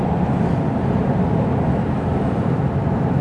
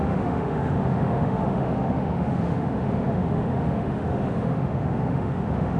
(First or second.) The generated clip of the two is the second